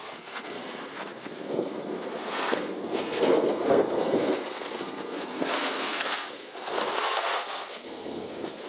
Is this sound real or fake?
fake